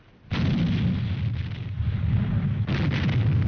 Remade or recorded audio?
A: recorded